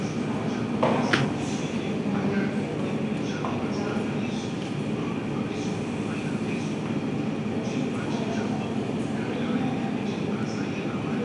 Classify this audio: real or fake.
real